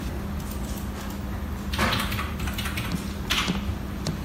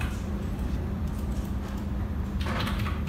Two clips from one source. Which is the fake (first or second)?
second